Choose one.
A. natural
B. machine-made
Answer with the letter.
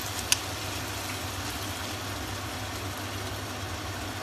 A